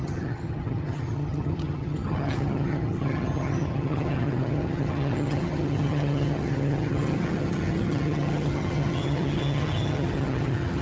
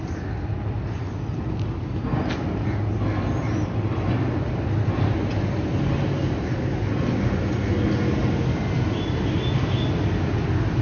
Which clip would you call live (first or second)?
second